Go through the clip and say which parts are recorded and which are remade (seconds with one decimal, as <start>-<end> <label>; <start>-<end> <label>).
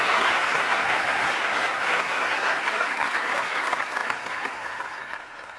0.0-5.6 remade